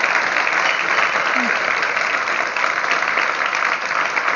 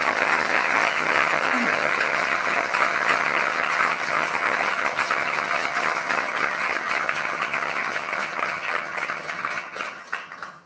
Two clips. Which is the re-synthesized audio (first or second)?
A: second